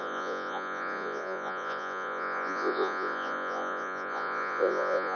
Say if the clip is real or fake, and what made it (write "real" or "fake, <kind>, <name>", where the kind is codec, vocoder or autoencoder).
fake, vocoder, Vocos